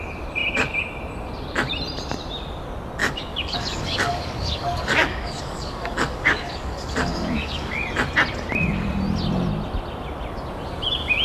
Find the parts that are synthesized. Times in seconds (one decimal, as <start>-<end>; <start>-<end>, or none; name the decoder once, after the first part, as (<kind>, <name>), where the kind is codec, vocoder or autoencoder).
3.0-7.8 (codec, DAC)